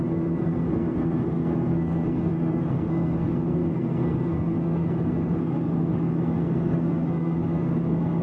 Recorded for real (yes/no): no